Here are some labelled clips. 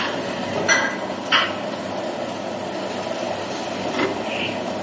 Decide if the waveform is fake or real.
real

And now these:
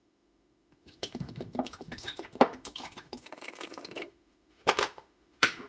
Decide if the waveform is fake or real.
fake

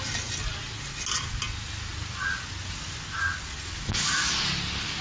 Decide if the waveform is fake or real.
real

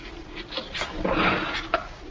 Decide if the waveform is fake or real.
real